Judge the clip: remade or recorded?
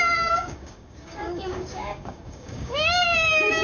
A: remade